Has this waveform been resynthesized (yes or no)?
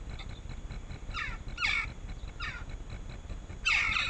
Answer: no